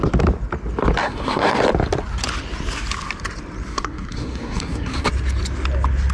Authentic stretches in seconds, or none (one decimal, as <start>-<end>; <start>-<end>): 0.0-1.0; 1.6-3.7; 5.1-6.1